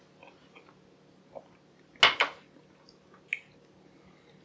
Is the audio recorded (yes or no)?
yes